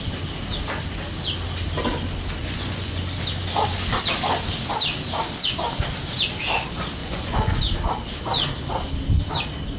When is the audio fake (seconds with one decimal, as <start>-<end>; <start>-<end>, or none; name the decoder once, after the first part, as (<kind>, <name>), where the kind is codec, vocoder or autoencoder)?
2.4-3.0 (vocoder, Vocos); 7.0-7.6